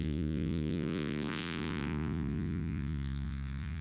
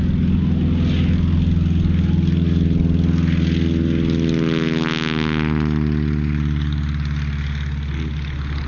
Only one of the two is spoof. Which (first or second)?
first